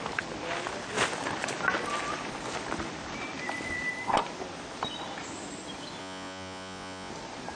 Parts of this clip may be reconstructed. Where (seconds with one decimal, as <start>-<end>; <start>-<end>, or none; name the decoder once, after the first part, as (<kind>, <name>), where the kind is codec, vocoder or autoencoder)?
6.0-7.1 (vocoder, Vocos)